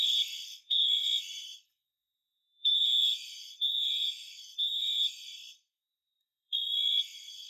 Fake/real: fake